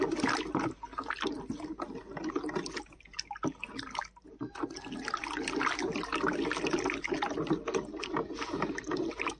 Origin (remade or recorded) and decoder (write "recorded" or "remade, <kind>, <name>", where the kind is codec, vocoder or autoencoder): recorded